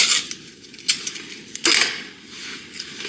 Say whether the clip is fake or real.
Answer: real